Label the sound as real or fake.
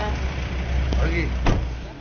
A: real